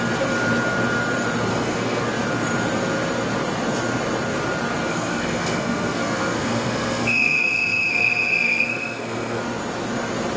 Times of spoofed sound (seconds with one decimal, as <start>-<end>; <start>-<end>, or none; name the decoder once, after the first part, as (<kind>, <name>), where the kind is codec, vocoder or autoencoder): 1.5-2.0 (codec, SNAC); 4.9-9.4